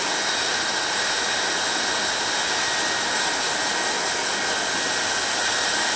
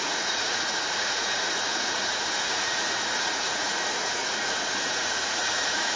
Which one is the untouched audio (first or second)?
first